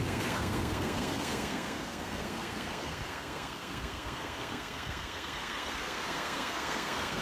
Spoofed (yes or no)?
yes